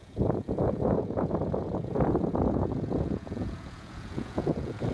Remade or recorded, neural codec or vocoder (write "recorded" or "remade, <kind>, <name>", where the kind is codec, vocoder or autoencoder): remade, vocoder, Vocos